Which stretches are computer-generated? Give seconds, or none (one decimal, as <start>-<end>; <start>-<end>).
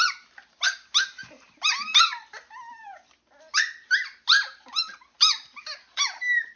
none